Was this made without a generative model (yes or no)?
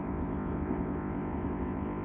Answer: no